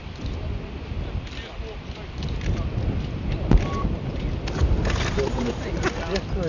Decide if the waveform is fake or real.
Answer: real